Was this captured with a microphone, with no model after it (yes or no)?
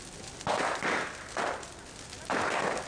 yes